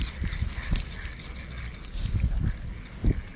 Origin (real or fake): real